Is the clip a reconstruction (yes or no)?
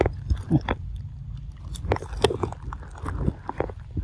no